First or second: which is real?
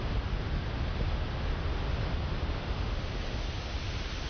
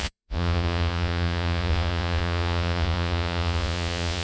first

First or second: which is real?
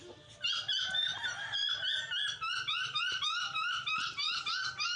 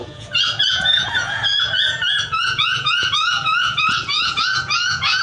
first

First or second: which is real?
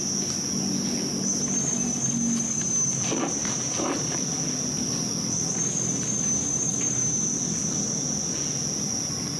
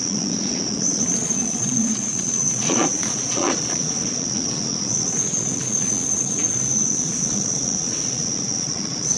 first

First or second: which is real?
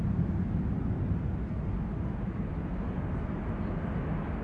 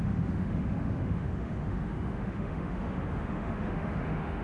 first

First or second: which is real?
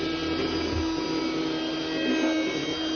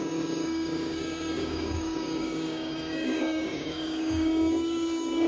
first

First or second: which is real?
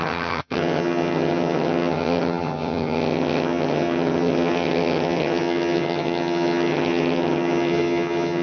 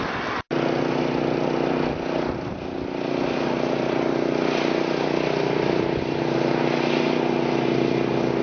second